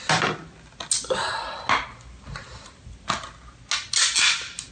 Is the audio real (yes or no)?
yes